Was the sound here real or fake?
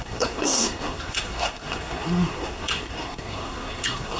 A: fake